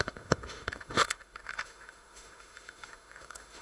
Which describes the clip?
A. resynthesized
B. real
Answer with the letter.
A